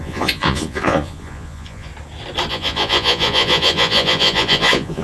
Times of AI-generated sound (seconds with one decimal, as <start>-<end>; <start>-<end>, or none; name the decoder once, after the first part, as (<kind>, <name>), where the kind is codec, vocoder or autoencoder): 0.0-1.9 (vocoder, Vocos); 2.5-5.0